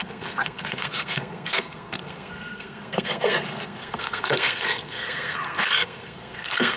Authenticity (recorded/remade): remade